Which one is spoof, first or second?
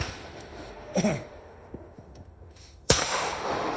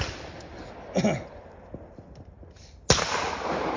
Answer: first